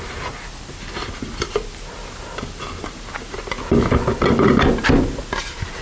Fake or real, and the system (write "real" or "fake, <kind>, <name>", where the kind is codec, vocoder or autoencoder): real